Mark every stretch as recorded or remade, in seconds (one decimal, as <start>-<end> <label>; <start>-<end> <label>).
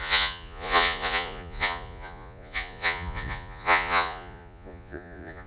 0.0-5.5 remade